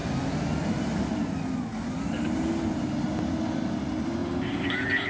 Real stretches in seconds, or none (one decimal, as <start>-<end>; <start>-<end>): 0.0-5.1